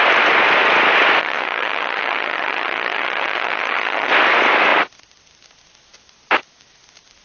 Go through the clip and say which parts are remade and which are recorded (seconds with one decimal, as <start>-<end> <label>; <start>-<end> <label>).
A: 0.0-1.2 recorded; 1.2-4.1 remade; 4.1-7.2 recorded